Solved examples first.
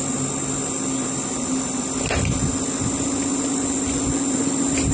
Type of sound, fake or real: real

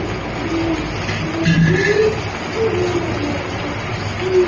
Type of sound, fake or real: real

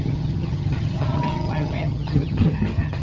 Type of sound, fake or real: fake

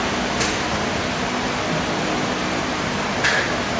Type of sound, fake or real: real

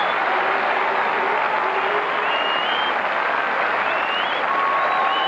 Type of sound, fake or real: real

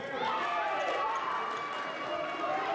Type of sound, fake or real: real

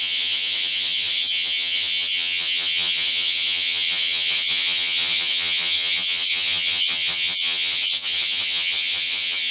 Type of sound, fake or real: fake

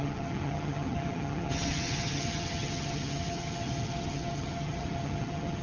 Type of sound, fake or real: fake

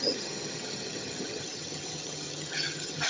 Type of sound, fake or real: fake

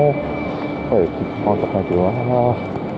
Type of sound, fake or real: real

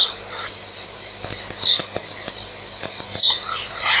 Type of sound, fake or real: real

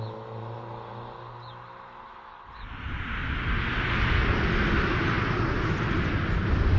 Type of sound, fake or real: real